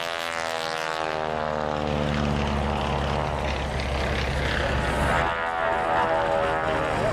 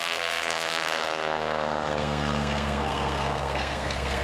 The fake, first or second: second